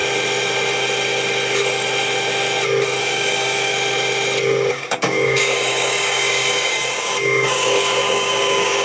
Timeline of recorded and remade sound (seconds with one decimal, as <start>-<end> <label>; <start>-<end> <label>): 0.0-3.0 recorded; 3.0-3.7 remade; 3.7-4.7 recorded; 4.7-8.8 remade